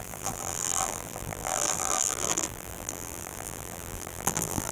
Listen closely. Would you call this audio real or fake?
fake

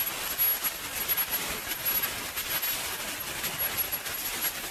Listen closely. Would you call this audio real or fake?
real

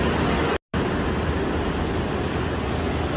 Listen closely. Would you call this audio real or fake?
real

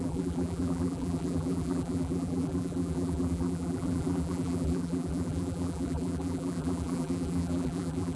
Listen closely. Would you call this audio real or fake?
fake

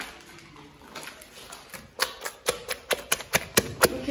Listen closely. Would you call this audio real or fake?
real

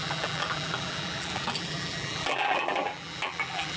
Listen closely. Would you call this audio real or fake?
fake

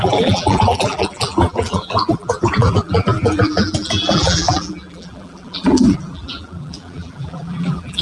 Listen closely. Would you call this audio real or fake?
fake